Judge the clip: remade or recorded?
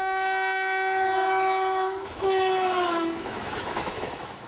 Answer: remade